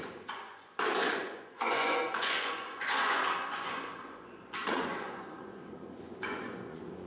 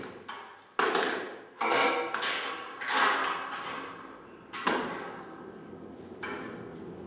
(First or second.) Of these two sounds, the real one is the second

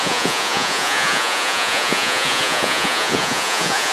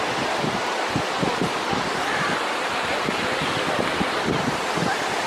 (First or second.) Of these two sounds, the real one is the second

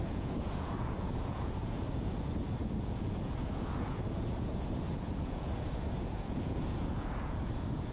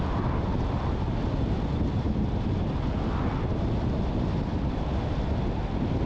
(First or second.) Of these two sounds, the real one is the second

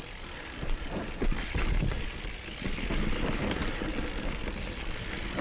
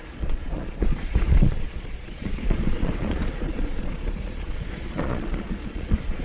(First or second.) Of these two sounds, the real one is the first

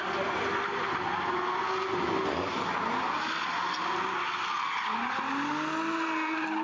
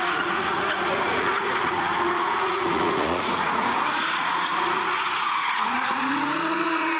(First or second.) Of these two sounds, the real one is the first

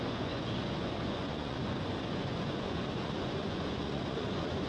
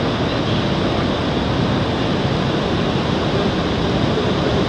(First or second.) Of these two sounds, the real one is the second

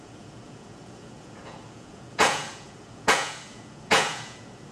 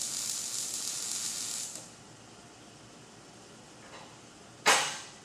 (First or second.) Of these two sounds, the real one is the second